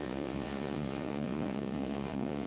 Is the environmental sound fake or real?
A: fake